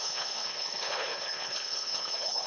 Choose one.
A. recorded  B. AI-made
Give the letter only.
B